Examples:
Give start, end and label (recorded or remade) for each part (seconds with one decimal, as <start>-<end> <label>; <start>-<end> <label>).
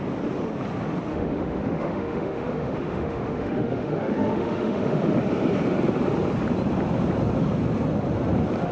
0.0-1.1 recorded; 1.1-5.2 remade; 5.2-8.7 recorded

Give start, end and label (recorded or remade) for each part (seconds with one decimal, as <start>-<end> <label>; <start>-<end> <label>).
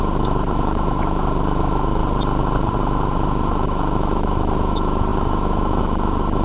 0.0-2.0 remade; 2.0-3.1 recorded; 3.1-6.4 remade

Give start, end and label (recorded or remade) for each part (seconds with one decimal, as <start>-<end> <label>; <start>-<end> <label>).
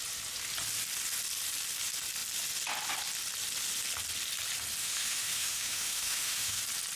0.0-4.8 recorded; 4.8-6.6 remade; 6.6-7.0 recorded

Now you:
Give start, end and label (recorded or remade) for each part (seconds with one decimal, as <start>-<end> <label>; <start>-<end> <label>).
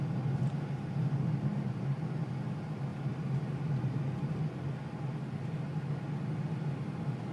0.0-7.3 recorded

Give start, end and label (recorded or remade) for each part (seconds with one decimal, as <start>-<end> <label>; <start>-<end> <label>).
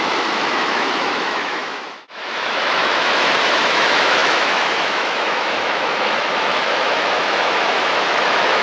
0.0-8.6 remade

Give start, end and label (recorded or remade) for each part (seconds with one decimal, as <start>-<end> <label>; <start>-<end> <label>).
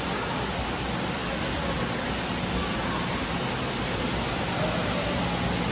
0.0-5.7 recorded